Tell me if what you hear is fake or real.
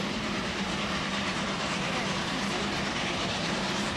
fake